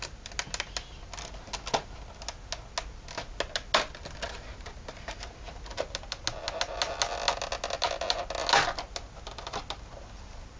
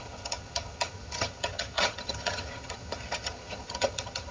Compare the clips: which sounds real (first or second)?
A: first